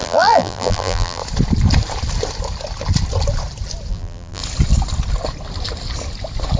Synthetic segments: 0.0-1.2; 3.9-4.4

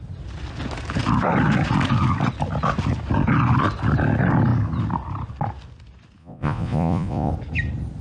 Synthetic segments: 6.2-7.3

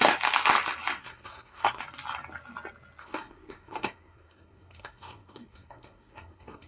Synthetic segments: 1.0-1.8; 3.0-6.7

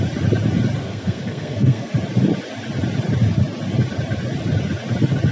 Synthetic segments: 0.8-1.9

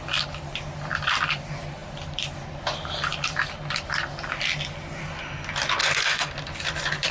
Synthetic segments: 5.8-6.3

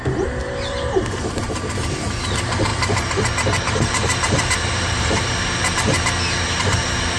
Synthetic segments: 0.4-1.5; 2.7-5.4